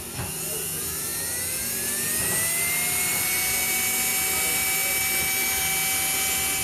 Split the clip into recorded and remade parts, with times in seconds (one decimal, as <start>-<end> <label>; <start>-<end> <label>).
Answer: 0.0-6.6 recorded